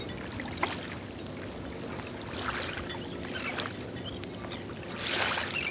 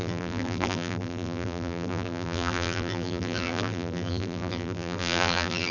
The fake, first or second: second